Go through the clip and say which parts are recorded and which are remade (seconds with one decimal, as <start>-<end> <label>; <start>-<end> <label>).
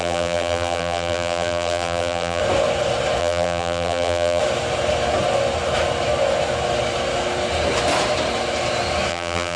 0.0-2.4 remade; 2.4-3.2 recorded; 3.2-4.4 remade; 4.4-9.1 recorded; 9.1-9.6 remade